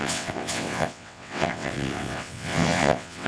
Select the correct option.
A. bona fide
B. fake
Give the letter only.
B